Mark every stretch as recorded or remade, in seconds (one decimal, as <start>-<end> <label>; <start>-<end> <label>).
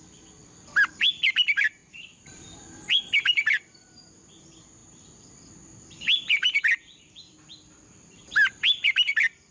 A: 0.0-4.8 remade; 4.8-7.0 recorded; 7.0-9.5 remade